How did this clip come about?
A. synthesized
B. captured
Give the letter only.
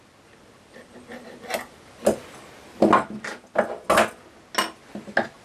B